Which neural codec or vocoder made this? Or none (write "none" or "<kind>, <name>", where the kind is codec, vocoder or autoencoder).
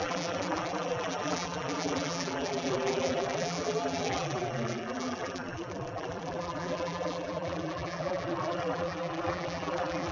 vocoder, BigVGAN v2